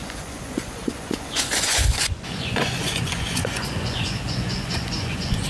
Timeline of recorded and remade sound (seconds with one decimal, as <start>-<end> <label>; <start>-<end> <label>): 0.0-5.5 remade